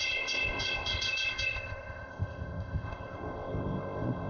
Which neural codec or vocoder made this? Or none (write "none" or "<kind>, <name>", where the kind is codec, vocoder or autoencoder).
codec, ZipCodec